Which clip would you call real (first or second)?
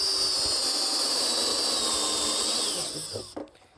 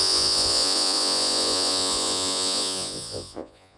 first